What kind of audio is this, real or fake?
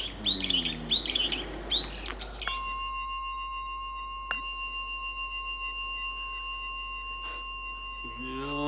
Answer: real